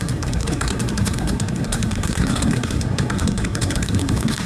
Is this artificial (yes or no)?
yes